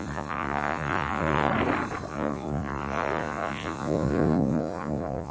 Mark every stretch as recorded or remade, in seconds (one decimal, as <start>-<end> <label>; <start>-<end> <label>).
0.0-1.5 remade; 1.5-2.1 recorded; 2.1-5.3 remade